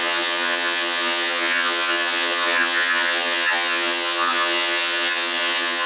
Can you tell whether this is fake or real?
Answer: fake